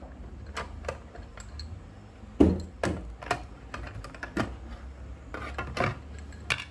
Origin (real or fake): real